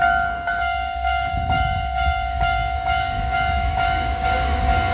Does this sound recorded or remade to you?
remade